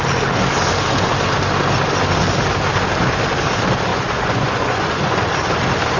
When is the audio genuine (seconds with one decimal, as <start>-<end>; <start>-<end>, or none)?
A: 0.0-3.9; 5.2-6.0